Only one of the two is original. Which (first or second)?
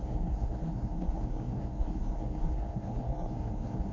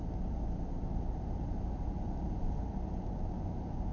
second